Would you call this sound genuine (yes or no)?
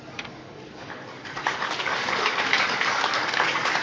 no